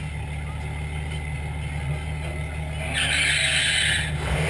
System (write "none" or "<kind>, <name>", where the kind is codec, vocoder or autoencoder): none